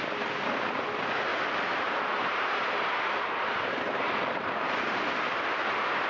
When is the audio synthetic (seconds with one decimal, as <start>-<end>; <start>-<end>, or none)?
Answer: 1.3-5.0